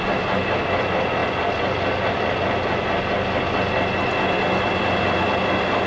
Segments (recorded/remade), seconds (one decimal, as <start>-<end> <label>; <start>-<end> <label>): 0.0-5.9 recorded